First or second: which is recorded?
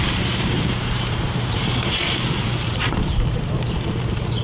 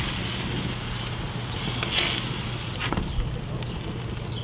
second